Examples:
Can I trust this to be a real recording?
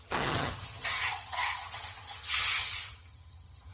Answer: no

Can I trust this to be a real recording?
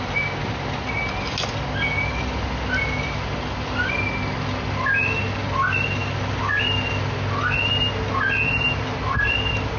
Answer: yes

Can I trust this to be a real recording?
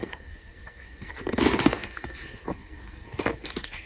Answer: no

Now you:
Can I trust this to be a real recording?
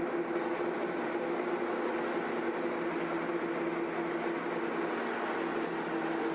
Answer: yes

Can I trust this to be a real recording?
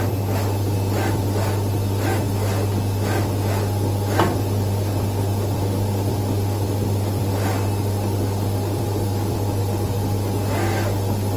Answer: yes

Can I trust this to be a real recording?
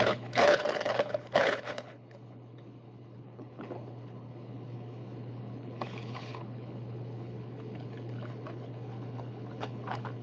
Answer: no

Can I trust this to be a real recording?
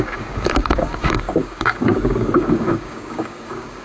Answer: no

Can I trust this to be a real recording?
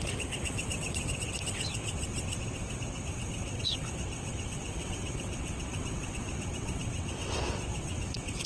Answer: no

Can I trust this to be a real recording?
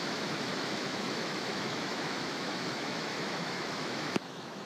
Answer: no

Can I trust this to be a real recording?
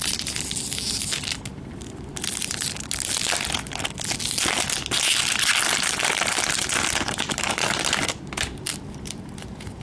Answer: yes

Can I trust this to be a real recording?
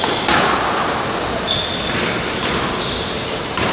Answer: yes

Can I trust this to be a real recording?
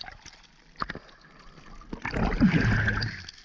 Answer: yes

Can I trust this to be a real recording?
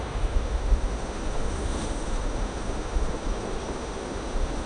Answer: no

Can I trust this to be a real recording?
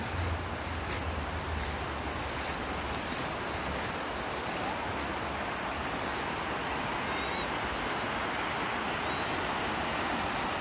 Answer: yes